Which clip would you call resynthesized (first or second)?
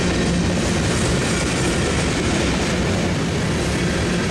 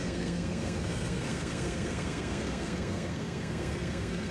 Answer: second